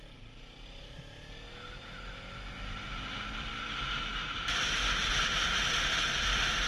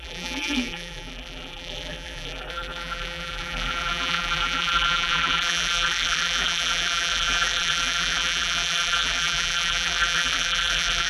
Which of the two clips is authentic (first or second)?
first